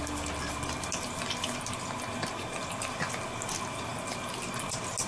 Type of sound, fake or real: real